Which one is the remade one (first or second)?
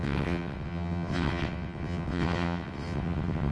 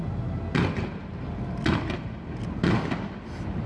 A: first